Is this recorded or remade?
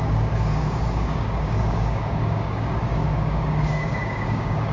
remade